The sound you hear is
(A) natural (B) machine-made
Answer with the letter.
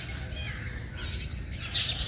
A